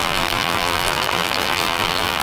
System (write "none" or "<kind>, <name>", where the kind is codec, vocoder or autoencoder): vocoder, BigVGAN v2